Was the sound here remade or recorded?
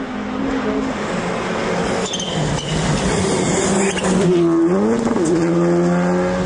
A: recorded